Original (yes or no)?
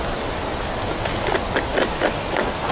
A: yes